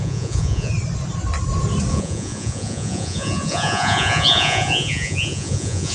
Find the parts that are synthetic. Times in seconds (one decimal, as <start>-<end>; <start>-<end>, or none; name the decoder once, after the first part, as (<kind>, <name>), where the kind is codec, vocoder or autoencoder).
0.0-0.7 (vocoder, Vocos); 1.9-5.9